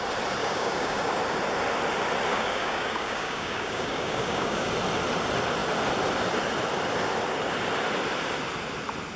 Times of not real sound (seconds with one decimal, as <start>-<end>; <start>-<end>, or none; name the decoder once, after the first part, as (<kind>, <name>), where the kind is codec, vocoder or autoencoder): 0.4-1.2 (codec, DAC); 2.3-4.7

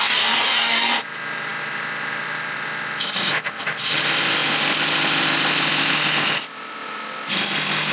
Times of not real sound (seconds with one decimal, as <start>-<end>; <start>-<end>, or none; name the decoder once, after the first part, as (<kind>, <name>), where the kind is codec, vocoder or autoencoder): 0.0-0.9 (codec, DAC)

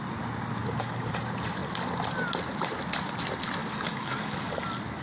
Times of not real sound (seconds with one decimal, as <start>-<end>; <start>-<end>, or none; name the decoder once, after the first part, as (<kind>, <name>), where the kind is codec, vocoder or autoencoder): 0.6-1.1 (codec, DAC); 3.6-4.4

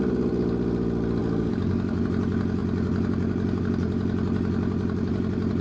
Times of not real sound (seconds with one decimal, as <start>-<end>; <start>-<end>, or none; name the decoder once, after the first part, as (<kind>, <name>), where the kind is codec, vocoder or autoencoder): 1.2-2.0 (codec, DAC)

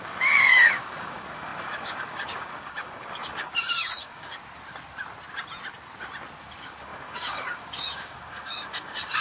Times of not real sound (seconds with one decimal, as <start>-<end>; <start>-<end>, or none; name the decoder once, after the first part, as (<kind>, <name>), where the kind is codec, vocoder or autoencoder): 0.0-4.4 (codec, DAC); 6.4-9.2